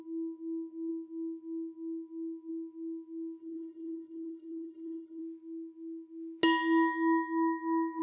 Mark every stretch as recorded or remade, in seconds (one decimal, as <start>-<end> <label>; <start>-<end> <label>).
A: 0.0-3.4 recorded; 3.4-5.2 remade; 5.2-8.0 recorded